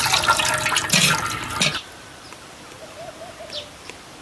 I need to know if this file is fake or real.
real